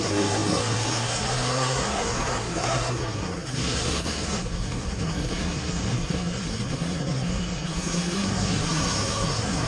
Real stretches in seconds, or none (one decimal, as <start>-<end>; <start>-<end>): none